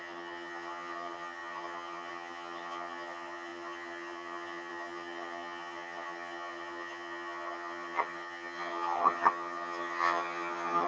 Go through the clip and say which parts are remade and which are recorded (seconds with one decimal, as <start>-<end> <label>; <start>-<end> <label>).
0.0-10.9 remade